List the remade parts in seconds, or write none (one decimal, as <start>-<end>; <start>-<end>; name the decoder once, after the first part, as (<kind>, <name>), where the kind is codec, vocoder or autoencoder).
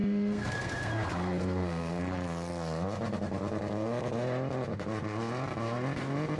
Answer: 0.0-0.9 (codec, SNAC); 1.4-2.0